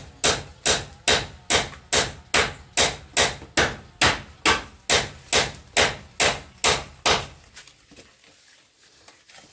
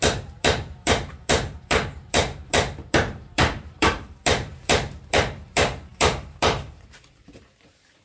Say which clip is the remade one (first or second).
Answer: second